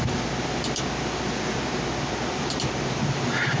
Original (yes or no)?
yes